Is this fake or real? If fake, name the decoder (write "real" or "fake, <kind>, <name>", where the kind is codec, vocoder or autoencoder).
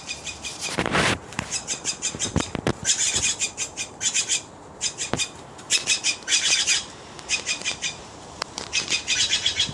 fake, vocoder, BigVGAN v2